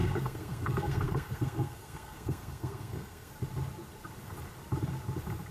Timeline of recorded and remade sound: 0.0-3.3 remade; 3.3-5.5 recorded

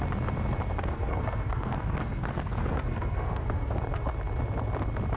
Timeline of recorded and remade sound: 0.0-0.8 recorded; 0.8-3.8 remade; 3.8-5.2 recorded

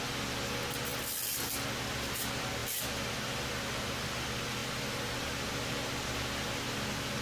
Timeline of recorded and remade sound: 0.0-7.2 recorded